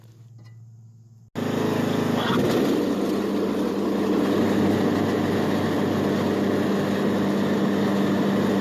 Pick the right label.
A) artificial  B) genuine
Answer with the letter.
B